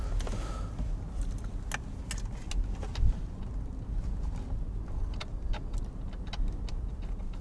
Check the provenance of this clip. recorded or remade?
recorded